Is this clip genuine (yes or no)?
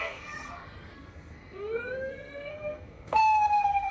no